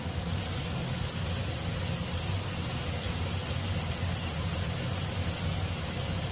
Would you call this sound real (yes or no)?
yes